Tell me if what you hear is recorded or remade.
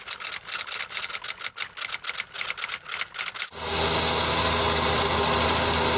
recorded